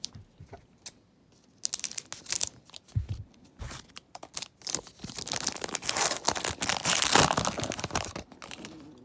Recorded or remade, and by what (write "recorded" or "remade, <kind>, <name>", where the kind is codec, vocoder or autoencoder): recorded